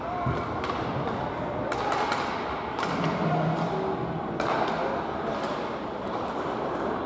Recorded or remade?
recorded